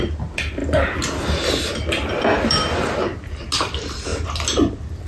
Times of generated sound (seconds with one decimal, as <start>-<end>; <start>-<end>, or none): none